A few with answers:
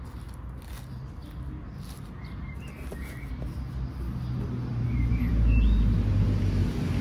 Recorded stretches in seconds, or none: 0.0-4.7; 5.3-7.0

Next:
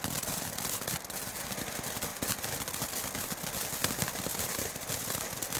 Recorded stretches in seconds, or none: 0.0-4.3; 4.9-5.6

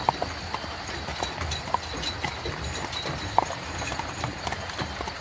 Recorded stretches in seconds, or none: 0.0-5.2

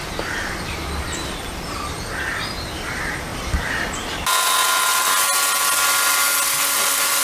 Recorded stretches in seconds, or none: 0.0-3.3; 3.9-7.2

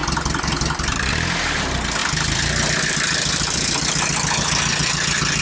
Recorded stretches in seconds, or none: 1.1-2.0

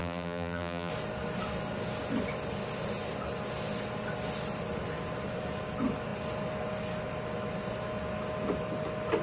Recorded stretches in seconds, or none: 0.9-9.2

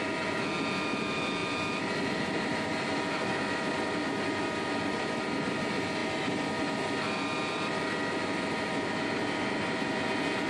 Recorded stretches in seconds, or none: 0.0-10.5